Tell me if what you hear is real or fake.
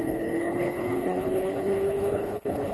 fake